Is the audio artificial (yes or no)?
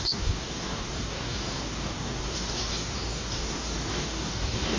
yes